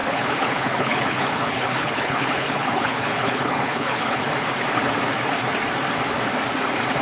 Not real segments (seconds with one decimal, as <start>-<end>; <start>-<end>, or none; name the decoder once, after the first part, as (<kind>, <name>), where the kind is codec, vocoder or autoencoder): 0.0-4.2 (codec, HILCodec)